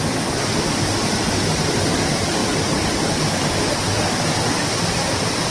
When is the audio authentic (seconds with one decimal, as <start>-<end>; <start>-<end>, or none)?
0.0-5.5